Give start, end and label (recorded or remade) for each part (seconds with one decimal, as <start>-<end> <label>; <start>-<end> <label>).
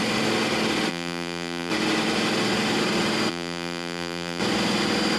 0.0-0.9 recorded; 0.9-1.7 remade; 1.7-3.3 recorded; 3.3-4.4 remade; 4.4-5.2 recorded